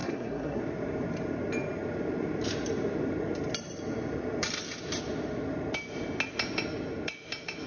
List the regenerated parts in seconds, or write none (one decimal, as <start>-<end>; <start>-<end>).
0.0-0.6